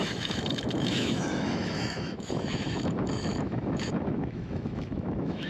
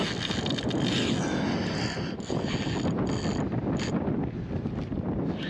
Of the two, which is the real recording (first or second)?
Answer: second